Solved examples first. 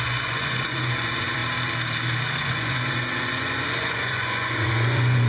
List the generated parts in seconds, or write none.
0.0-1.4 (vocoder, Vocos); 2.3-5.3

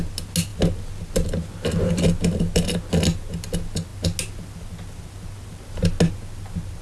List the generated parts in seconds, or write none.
none